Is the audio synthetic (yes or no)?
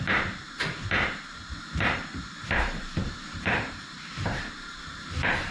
yes